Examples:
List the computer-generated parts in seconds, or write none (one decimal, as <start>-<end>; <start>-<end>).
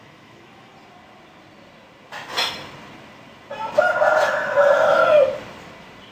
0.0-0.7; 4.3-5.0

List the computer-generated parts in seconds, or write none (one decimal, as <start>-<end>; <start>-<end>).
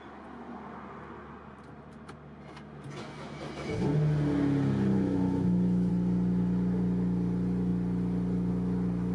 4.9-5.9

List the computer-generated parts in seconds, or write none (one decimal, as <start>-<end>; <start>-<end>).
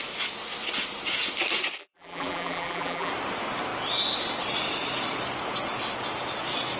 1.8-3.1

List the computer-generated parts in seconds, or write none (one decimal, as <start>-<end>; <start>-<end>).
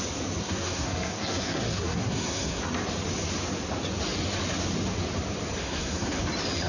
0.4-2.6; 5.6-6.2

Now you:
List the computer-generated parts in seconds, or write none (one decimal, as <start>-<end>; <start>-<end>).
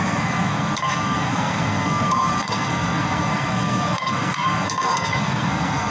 0.0-5.9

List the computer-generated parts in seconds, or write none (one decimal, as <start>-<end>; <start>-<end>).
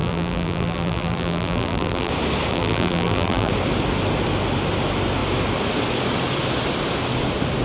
0.0-2.1; 2.5-3.5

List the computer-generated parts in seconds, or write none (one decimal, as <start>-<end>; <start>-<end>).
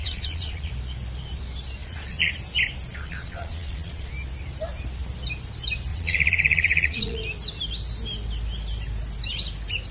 0.0-0.7; 1.8-2.3; 2.9-4.1; 5.9-7.2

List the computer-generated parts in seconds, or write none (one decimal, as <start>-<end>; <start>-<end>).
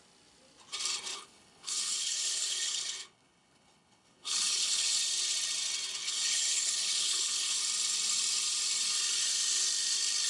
1.1-5.0; 6.0-7.6